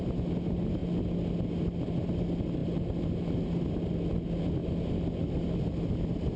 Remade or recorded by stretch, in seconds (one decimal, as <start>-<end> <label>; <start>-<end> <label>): 0.0-2.6 recorded; 2.6-3.6 remade; 3.6-6.4 recorded